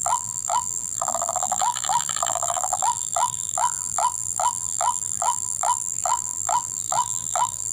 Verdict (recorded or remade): remade